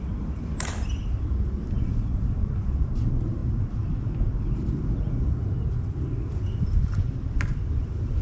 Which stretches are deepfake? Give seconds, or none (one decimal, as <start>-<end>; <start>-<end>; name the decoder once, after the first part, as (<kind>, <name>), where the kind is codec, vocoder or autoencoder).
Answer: none